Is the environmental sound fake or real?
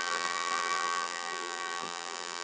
fake